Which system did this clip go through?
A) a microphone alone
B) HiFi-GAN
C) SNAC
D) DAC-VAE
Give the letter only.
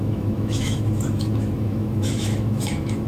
D